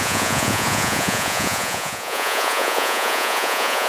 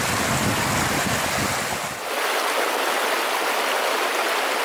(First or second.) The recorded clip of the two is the second